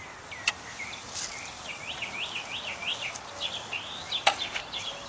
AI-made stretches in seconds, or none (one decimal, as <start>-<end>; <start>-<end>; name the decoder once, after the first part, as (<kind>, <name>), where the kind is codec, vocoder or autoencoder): none